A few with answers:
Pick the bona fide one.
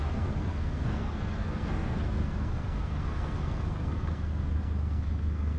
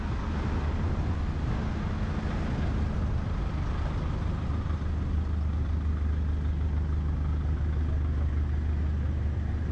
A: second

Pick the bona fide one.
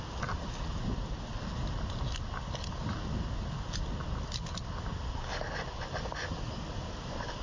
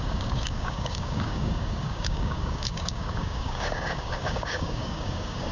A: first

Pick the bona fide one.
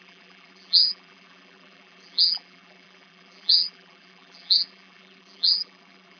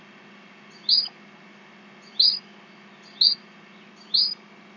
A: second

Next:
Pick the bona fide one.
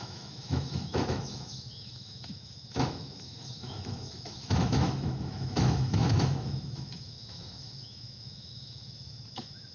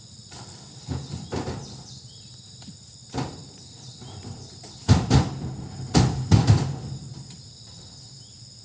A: second